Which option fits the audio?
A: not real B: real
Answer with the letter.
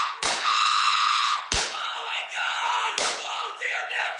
A